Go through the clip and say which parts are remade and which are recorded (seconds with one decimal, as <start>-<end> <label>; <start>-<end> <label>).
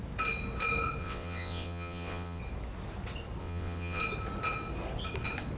0.0-1.0 recorded; 1.0-2.4 remade; 2.4-3.4 recorded; 3.4-4.0 remade; 4.0-5.6 recorded